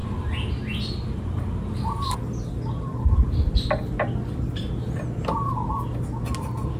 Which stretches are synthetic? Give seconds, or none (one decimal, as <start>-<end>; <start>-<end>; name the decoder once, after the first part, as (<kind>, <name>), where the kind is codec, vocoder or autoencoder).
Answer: none